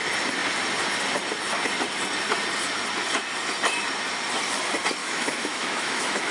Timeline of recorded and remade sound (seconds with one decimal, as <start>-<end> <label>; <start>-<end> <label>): 0.0-5.0 recorded; 5.0-6.3 remade